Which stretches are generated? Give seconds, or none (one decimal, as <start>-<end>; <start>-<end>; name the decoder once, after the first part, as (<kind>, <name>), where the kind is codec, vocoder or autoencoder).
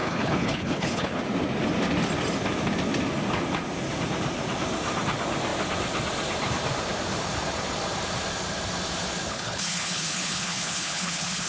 0.0-1.2 (codec, HILCodec); 9.3-11.5